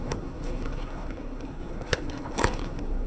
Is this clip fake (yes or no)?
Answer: yes